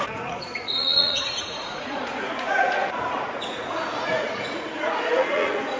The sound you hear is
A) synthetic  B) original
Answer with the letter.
A